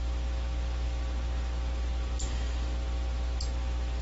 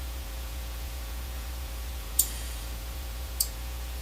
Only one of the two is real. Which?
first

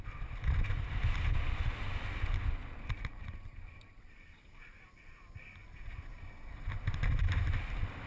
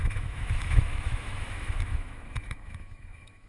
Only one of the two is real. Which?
first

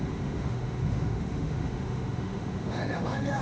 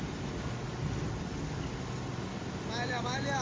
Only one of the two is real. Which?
second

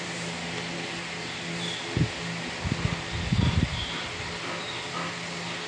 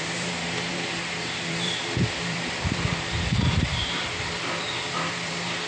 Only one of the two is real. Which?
first